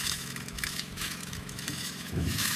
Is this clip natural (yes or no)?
no